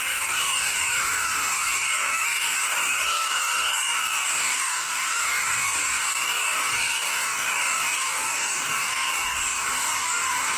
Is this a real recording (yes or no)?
no